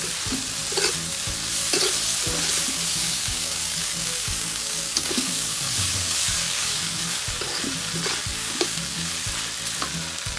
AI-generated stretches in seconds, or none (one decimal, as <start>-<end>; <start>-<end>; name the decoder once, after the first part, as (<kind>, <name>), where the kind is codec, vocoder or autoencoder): 2.9-7.4 (codec, DAC); 8.3-9.1